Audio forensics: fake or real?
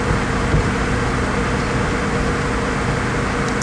real